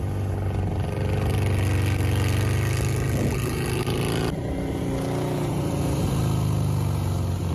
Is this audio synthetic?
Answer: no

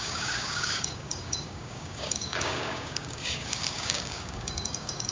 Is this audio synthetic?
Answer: yes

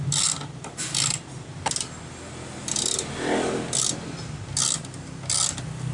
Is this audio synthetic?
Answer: no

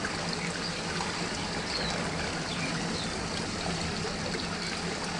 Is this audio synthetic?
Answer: no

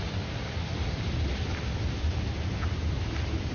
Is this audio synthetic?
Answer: no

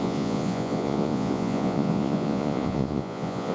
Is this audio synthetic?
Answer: yes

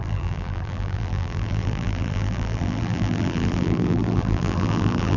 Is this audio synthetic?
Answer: yes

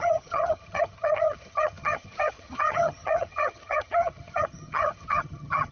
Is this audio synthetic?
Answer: yes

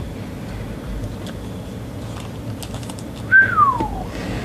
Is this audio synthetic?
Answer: no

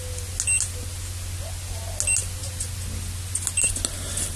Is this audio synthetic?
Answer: no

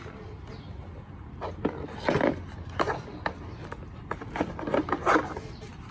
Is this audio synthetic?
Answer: no